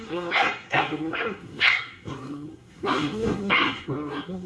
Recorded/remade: remade